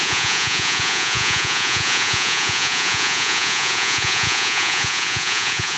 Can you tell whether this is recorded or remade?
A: remade